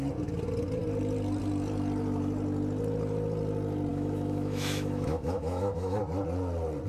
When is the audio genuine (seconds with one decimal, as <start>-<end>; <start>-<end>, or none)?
0.0-3.9; 6.0-6.9